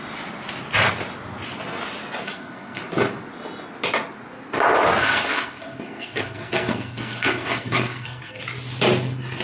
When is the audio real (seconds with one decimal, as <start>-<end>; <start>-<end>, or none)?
0.0-2.2; 2.8-5.0; 8.4-9.4